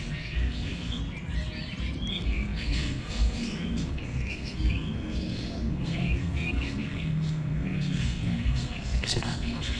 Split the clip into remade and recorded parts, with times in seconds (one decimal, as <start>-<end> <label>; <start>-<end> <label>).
0.0-1.0 remade; 1.0-2.1 recorded; 2.1-9.8 remade